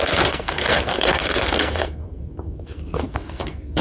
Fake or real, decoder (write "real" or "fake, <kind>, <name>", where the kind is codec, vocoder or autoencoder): fake, codec, SNAC